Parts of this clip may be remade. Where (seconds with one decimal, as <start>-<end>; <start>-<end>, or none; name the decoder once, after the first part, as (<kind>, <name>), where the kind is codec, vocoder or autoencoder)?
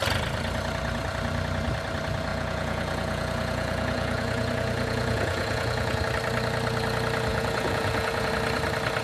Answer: 2.3-6.0 (vocoder, Vocos); 7.3-8.3